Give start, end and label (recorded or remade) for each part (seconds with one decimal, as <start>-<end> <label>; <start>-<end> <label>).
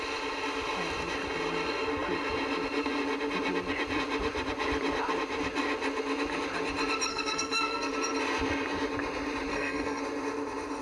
0.0-7.1 recorded; 7.1-7.9 remade; 7.9-9.5 recorded; 9.5-10.0 remade; 10.0-10.8 recorded